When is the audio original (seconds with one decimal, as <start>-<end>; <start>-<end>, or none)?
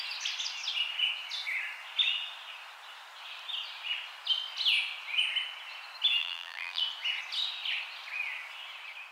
0.0-6.2; 6.8-9.1